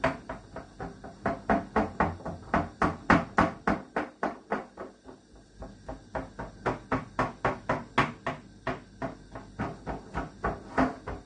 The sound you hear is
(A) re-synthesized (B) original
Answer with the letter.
B